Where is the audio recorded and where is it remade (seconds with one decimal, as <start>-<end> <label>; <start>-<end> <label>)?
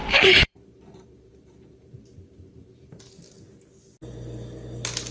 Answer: 0.0-3.1 remade; 3.1-5.1 recorded